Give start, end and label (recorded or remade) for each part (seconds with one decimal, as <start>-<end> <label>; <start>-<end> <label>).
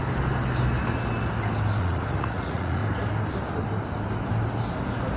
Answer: 0.0-1.8 recorded; 1.8-2.8 remade; 2.8-5.2 recorded